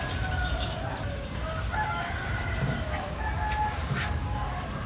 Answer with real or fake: real